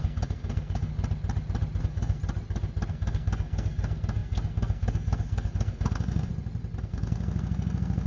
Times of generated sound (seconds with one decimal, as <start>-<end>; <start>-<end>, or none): 0.0-0.9; 1.8-2.2; 2.9-6.3; 6.8-8.1